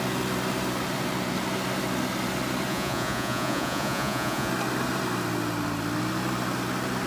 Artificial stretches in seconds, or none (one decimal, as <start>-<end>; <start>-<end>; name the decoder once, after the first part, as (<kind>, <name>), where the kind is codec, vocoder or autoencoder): 2.7-4.5 (vocoder, Vocos)